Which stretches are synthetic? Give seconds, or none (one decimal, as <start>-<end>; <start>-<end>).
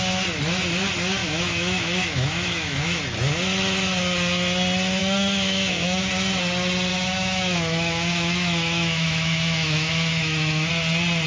1.2-3.0; 5.0-6.1; 6.9-10.7